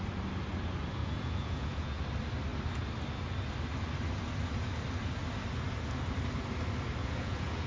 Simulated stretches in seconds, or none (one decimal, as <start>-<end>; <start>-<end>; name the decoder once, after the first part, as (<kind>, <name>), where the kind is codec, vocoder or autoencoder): 1.0-2.0 (vocoder, Vocos); 7.0-7.7